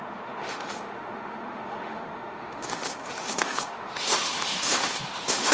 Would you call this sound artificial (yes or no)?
yes